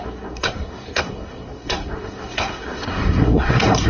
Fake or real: fake